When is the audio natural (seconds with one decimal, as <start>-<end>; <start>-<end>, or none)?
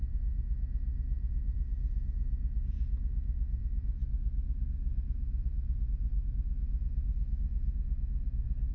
0.0-8.7